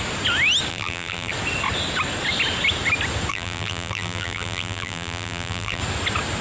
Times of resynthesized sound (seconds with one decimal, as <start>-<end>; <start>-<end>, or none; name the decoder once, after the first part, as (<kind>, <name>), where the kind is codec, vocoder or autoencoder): 0.7-1.3 (vocoder, BigVGAN v2); 3.3-5.8